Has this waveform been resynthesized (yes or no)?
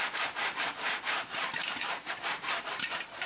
yes